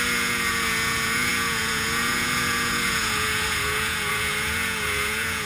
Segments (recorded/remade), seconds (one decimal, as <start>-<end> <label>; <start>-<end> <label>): 0.0-5.5 remade